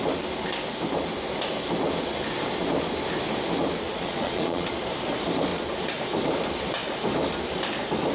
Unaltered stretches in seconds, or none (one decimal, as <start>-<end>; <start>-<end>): 0.0-3.9; 4.7-8.1